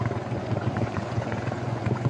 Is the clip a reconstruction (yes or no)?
yes